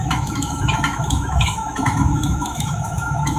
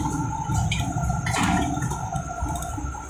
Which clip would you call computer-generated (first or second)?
first